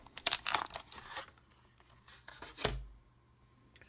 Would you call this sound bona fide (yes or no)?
yes